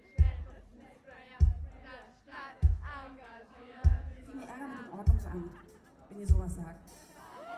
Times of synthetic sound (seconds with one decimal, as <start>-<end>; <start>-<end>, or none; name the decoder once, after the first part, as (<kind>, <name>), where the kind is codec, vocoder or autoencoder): 2.3-4.3 (autoencoder, DAC-VAE)